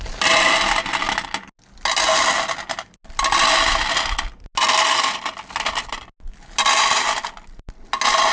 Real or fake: real